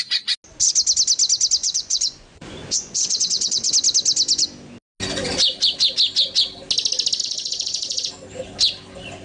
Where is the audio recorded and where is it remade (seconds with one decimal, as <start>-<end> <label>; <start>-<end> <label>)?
0.0-1.6 recorded; 1.6-3.7 remade; 3.7-7.2 recorded; 7.2-8.1 remade; 8.1-9.2 recorded